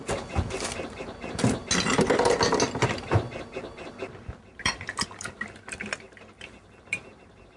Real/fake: real